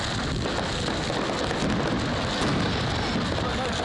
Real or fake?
real